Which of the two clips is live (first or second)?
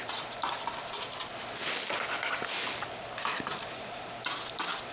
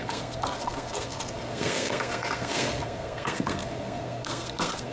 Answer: first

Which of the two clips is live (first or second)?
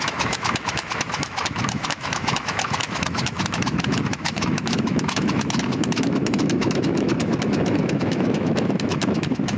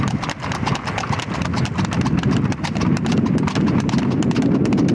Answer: second